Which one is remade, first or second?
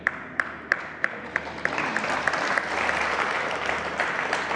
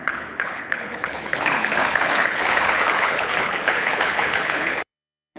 second